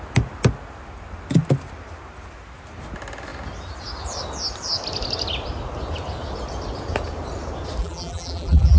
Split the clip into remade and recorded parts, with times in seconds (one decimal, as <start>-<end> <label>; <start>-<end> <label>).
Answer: 0.0-7.8 recorded; 7.8-8.8 remade